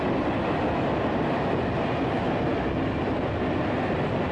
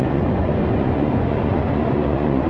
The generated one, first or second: second